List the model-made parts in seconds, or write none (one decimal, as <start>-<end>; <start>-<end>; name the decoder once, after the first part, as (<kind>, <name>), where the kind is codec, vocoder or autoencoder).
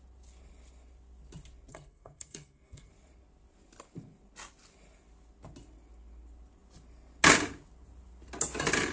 1.7-2.9 (codec, SNAC)